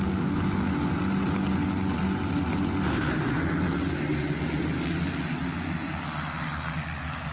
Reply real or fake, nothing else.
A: real